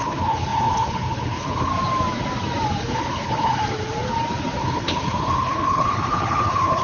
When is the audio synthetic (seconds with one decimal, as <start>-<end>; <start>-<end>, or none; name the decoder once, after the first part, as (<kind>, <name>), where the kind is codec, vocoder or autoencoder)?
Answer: 0.0-1.7 (codec, HILCodec); 2.8-3.6; 4.6-6.8